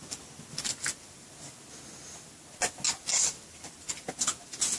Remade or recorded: recorded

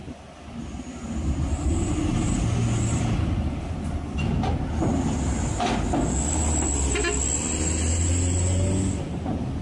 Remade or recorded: recorded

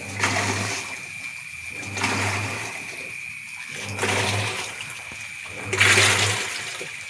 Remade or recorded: recorded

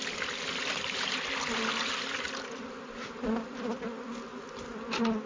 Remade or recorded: recorded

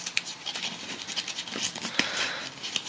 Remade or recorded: recorded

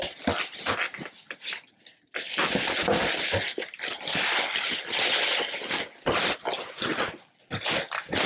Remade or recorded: recorded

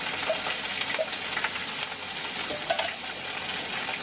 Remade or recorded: recorded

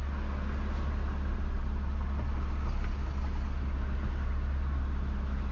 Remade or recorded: recorded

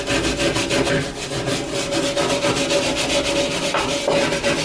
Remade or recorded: recorded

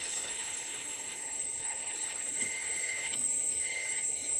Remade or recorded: remade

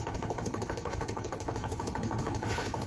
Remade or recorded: remade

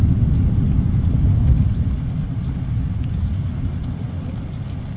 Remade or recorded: recorded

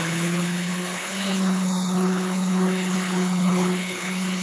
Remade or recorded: remade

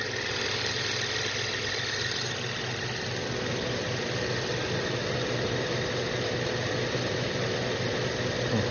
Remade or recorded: recorded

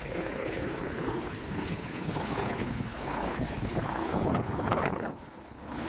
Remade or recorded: remade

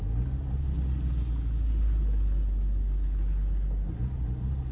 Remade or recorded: recorded